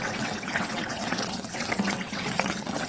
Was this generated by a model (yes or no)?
yes